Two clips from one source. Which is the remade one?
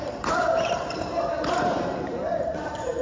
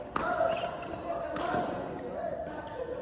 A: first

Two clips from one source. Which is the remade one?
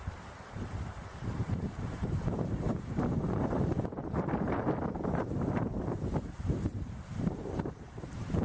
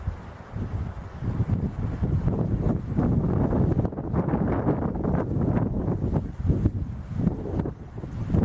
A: first